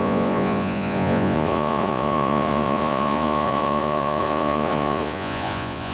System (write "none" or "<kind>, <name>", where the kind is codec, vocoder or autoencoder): vocoder, Vocos